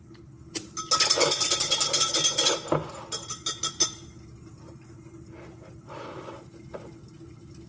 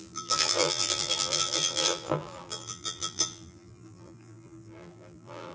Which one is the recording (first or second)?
first